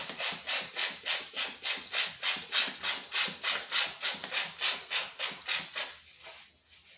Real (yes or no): yes